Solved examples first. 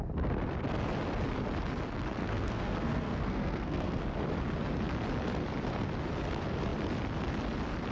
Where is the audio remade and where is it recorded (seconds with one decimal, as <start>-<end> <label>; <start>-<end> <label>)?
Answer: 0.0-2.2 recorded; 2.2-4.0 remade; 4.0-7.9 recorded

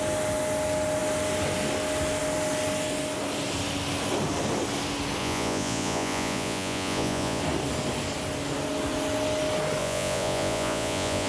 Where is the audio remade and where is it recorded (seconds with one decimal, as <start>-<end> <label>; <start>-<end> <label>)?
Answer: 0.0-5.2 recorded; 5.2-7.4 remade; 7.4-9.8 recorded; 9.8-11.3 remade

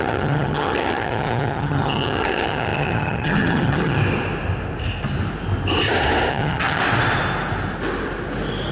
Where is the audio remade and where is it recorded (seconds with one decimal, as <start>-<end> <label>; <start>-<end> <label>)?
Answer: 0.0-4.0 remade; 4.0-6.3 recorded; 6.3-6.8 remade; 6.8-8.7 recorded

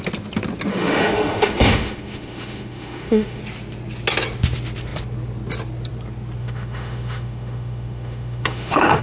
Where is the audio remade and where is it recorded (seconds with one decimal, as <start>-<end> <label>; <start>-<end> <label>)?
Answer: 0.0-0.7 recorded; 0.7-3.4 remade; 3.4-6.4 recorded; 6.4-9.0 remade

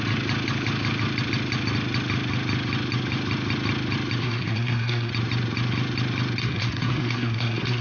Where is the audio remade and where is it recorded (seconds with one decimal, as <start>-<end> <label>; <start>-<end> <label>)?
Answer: 0.0-4.2 recorded; 4.2-5.1 remade; 5.1-6.4 recorded; 6.4-7.8 remade